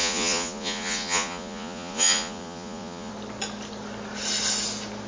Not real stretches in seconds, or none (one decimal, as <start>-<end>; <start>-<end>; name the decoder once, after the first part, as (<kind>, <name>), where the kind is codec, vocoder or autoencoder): 0.0-3.1 (vocoder, Vocos)